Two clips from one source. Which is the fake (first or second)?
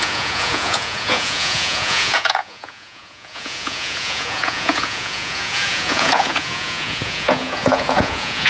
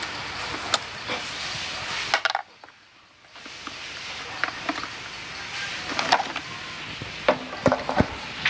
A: first